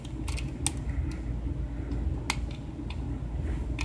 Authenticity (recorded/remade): recorded